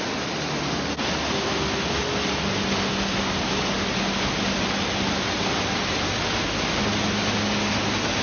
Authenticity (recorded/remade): recorded